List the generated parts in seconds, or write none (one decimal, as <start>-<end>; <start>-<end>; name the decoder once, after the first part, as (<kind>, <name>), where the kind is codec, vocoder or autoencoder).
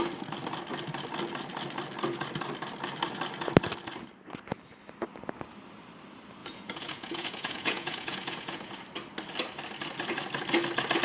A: 6.4-8.8 (vocoder, Vocos)